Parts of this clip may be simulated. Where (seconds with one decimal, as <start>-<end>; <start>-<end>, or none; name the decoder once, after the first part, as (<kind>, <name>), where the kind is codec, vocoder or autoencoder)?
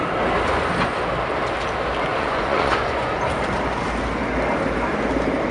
2.1-3.2 (vocoder, Vocos)